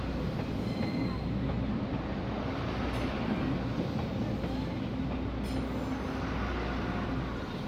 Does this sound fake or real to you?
real